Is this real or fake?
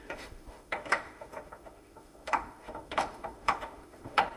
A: fake